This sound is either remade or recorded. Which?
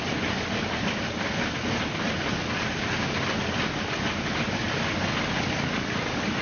recorded